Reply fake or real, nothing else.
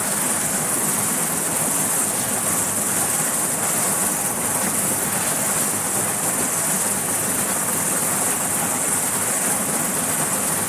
real